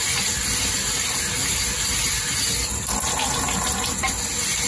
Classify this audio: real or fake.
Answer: real